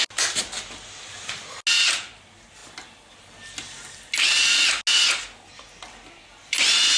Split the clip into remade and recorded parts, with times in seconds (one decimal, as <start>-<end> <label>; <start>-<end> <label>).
0.0-7.0 recorded